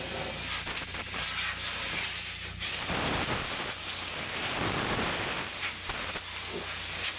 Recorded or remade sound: recorded